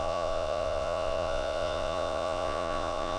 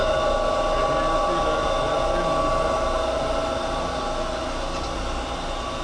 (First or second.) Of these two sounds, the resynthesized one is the first